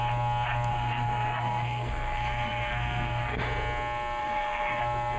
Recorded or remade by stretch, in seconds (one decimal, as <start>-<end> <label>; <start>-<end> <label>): 0.0-0.7 recorded; 0.7-3.4 remade; 3.4-4.2 recorded; 4.2-4.8 remade; 4.8-5.2 recorded